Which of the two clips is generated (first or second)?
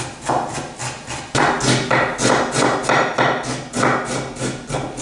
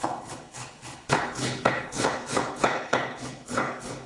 second